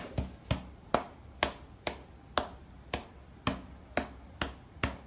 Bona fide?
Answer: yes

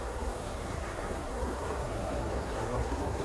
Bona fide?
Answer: no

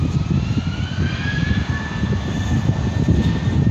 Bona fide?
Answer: yes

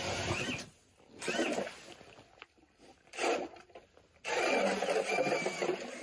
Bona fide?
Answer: yes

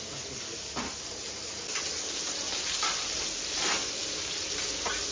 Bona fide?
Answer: yes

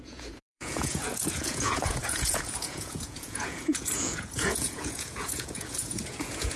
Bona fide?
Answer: no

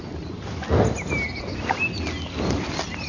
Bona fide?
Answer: yes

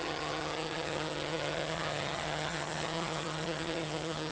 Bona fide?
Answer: no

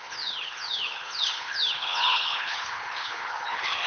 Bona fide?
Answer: no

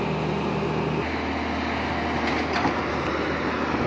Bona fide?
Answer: yes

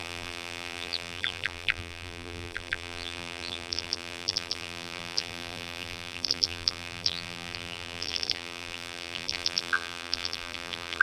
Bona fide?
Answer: no